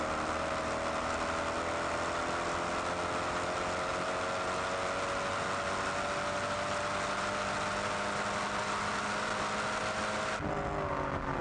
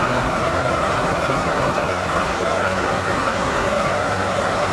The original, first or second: first